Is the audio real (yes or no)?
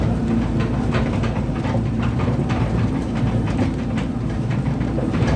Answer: no